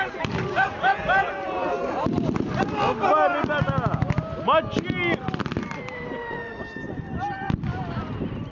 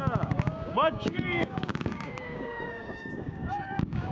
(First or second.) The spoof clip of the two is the second